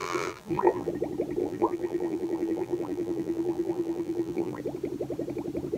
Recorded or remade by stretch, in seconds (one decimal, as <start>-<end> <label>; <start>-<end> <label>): 0.0-0.9 remade; 0.9-1.4 recorded; 1.4-4.6 remade; 4.6-5.8 recorded